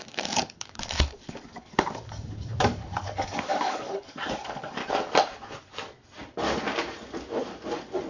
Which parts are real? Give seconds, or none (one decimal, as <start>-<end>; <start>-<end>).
4.8-8.1